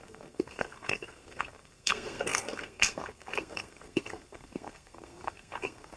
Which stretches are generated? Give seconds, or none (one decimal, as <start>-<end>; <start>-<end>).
0.0-6.0